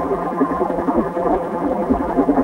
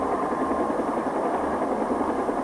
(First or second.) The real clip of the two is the second